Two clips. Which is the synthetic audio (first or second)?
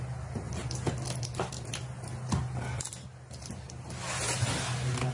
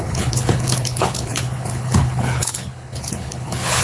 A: second